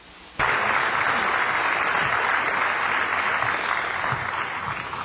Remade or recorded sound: recorded